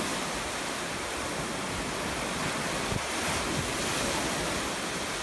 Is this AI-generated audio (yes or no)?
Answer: no